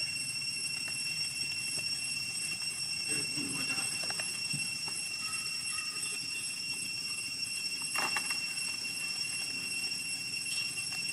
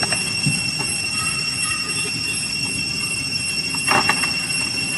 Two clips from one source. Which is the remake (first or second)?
first